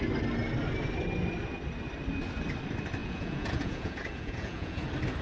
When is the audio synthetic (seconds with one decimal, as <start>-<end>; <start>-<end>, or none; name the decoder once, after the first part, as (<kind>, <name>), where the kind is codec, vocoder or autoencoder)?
3.0-4.8 (vocoder, Vocos)